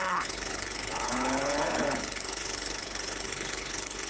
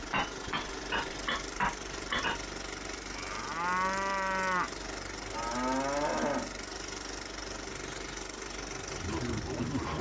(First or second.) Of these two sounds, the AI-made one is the first